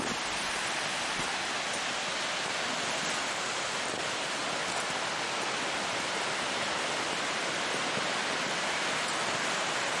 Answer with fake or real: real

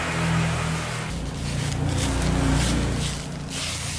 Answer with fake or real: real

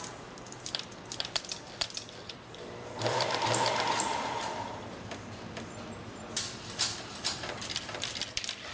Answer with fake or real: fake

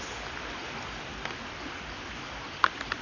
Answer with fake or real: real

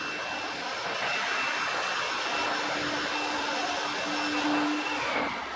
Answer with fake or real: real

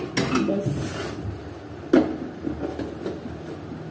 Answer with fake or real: real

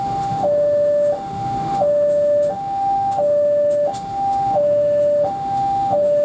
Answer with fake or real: fake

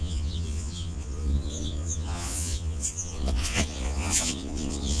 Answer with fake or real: fake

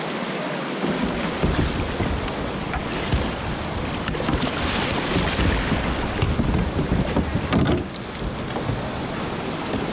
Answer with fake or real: real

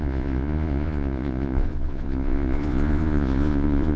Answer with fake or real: fake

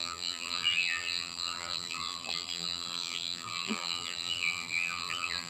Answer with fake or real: fake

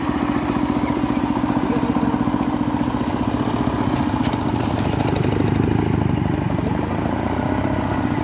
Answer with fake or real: real